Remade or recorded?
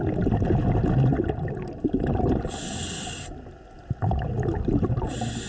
recorded